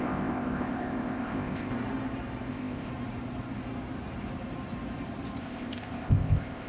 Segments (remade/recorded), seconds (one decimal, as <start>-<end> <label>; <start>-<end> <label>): 0.0-1.7 remade; 1.7-2.5 recorded; 2.5-2.9 remade; 2.9-5.4 recorded; 5.4-6.7 remade